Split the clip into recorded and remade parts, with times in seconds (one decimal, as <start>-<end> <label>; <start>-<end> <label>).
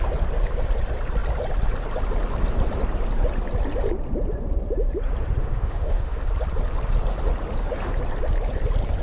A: 0.0-5.4 recorded; 5.4-6.2 remade; 6.2-9.0 recorded